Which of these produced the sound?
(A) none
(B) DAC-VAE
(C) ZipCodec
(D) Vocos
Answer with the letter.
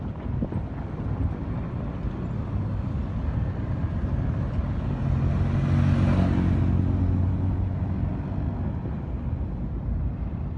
A